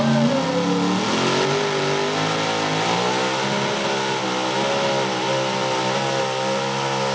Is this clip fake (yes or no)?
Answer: no